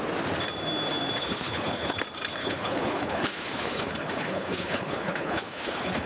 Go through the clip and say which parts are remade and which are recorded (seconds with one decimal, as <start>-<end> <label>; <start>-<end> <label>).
0.0-1.2 recorded; 1.2-2.0 remade; 2.0-2.4 recorded; 2.4-6.1 remade

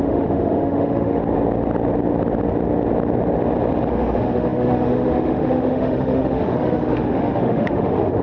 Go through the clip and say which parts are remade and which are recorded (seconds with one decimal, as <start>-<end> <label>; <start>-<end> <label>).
0.0-1.2 remade; 1.2-3.9 recorded; 3.9-8.2 remade

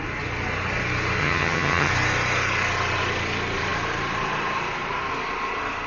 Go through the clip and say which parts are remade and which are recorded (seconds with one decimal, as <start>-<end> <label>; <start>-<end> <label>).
0.0-1.2 recorded; 1.2-1.9 remade; 1.9-5.9 recorded

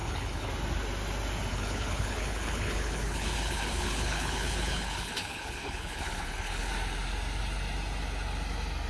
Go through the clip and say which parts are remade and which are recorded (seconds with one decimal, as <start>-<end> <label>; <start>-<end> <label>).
0.0-0.5 remade; 0.5-1.5 recorded; 1.5-6.7 remade; 6.7-8.9 recorded

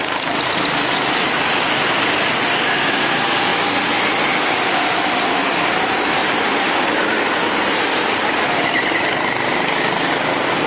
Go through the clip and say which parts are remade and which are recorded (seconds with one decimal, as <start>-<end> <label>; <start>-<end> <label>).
0.0-6.2 recorded; 6.2-7.1 remade; 7.1-10.7 recorded

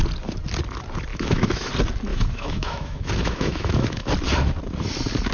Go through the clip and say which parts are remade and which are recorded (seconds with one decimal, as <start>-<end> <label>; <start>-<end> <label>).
0.0-1.1 recorded; 1.1-1.7 remade; 1.7-2.1 recorded; 2.1-4.1 remade; 4.1-5.3 recorded

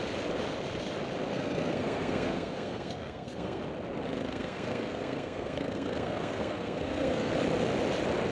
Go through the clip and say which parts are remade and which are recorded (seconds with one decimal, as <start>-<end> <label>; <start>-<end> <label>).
0.0-1.3 recorded; 1.3-3.6 remade; 3.6-4.3 recorded; 4.3-7.3 remade; 7.3-8.3 recorded

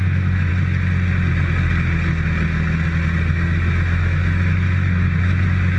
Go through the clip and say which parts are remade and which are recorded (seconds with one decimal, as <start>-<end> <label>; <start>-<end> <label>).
0.0-0.5 remade; 0.5-3.3 recorded; 3.3-5.8 remade